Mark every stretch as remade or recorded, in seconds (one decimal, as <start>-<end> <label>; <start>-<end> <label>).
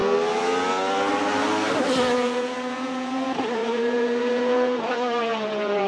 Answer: 0.0-2.0 recorded; 2.0-5.9 remade